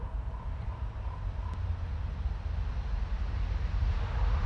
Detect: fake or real real